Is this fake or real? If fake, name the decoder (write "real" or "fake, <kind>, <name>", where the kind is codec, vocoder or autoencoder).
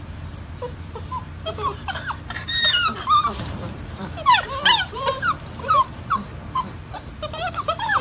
fake, vocoder, BigVGAN v2